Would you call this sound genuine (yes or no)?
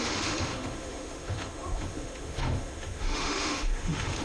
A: no